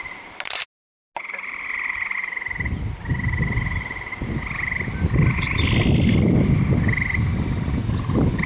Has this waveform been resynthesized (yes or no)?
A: no